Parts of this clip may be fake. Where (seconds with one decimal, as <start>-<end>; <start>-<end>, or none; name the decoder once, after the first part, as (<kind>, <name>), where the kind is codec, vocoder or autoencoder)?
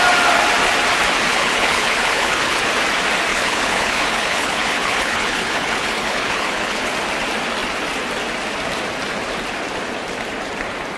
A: 1.3-2.6 (codec, HILCodec); 3.3-6.9